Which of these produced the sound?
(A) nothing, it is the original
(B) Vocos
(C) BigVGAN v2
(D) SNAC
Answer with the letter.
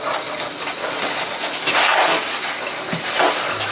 A